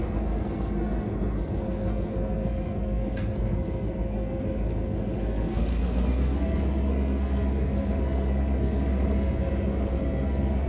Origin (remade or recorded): remade